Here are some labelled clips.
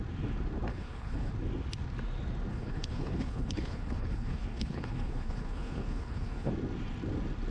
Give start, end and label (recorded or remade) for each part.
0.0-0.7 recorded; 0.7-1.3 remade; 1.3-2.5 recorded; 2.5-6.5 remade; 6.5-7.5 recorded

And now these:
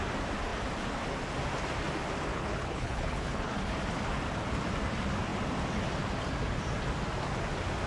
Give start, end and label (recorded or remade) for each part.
0.0-2.3 recorded; 2.3-3.8 remade; 3.8-7.9 recorded

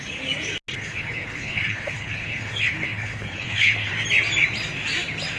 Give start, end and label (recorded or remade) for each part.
0.0-0.7 recorded; 0.7-3.9 remade; 3.9-5.4 recorded

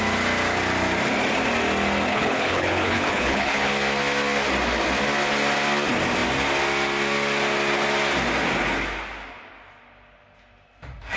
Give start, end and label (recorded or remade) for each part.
0.0-2.1 recorded; 2.1-3.7 remade; 3.7-11.2 recorded

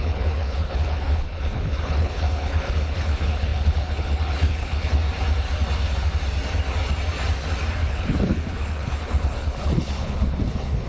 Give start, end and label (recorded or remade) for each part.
0.0-5.0 remade; 5.0-7.9 recorded; 7.9-10.9 remade